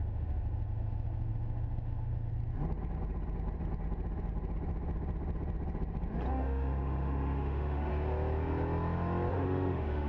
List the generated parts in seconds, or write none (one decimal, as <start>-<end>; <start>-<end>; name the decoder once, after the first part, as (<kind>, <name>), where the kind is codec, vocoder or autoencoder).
0.0-2.3 (autoencoder, DAC-VAE); 6.3-7.9; 9.3-10.1